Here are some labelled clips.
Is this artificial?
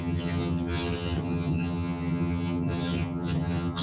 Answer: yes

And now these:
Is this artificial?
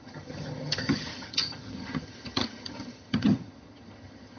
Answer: yes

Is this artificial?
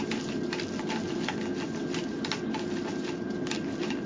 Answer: no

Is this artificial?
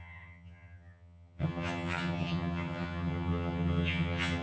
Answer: yes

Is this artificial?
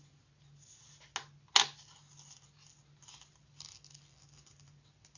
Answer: no